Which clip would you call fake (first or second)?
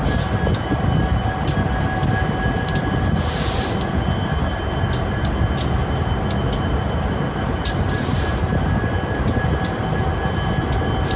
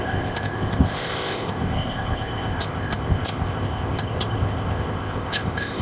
second